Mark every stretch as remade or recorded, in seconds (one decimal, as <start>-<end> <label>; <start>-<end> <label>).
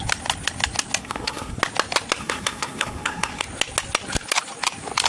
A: 0.0-1.0 recorded; 1.0-1.6 remade; 1.6-2.2 recorded; 2.2-3.4 remade; 3.4-5.1 recorded